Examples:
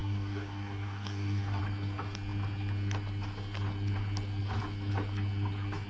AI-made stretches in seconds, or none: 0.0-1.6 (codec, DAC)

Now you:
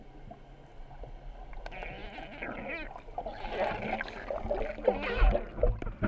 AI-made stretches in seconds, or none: none

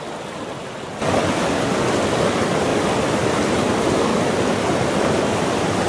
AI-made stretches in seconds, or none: none

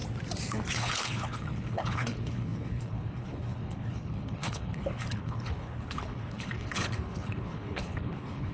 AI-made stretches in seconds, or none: 0.7-8.5 (codec, HILCodec)

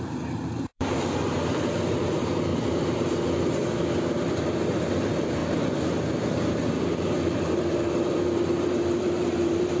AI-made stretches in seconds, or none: 0.0-2.5 (vocoder, BigVGAN v2); 4.8-5.4; 6.8-9.8